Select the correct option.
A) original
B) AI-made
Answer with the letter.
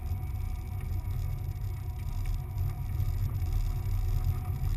A